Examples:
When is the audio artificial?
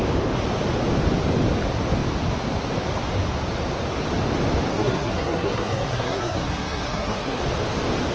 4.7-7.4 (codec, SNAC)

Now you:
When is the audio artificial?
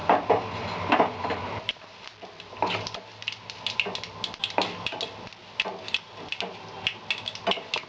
none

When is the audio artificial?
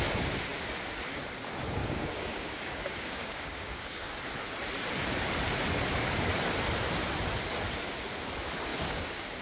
1.8-4.2 (codec, DAC); 8.7-9.4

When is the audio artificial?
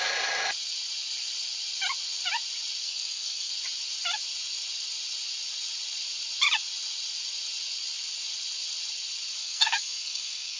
2.8-3.5 (codec, SNAC); 9.4-10.6